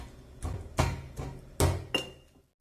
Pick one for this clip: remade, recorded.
recorded